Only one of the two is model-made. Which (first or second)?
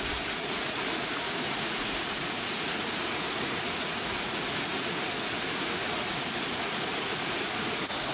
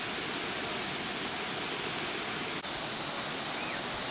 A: first